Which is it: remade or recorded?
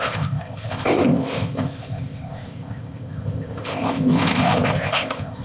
remade